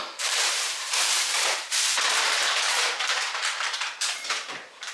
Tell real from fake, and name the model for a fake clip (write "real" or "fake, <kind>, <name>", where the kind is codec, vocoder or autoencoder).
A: fake, vocoder, BigVGAN v2